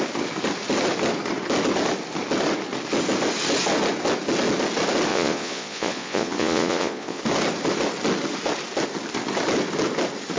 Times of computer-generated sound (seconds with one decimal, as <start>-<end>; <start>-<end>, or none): 5.1-7.2